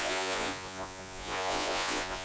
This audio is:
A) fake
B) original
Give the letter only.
A